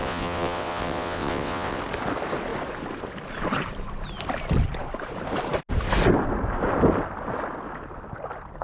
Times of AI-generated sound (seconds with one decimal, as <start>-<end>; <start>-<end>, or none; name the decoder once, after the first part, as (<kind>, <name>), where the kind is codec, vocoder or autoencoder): 0.0-1.8 (vocoder, WaveNeXt)